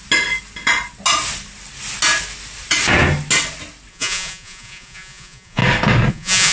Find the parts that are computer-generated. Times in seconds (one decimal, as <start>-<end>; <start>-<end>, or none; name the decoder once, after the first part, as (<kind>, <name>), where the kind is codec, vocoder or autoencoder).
3.9-5.6 (vocoder, Vocos); 6.1-6.5